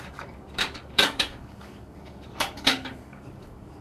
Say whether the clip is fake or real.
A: fake